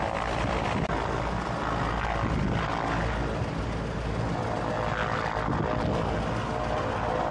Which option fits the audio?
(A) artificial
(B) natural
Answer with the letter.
B